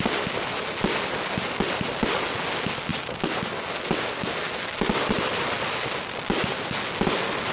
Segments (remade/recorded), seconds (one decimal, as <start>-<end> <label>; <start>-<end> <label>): 0.0-7.5 recorded

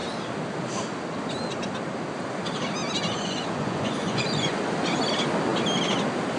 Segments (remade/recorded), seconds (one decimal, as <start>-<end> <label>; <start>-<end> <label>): 0.0-3.1 recorded; 3.1-4.6 remade; 4.6-6.4 recorded

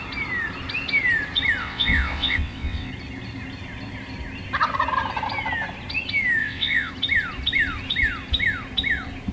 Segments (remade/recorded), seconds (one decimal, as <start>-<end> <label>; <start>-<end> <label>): 0.0-1.6 recorded; 1.6-2.9 remade; 2.9-6.4 recorded; 6.4-6.9 remade; 6.9-9.3 recorded